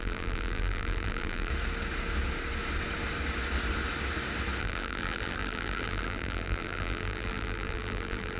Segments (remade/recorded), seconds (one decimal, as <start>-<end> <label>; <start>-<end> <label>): 0.0-1.5 remade; 1.5-4.6 recorded; 4.6-8.4 remade